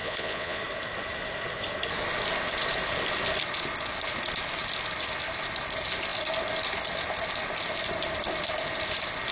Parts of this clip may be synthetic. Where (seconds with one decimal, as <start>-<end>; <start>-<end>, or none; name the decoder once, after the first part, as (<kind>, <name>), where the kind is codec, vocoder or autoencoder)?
0.0-0.6 (vocoder, Vocos)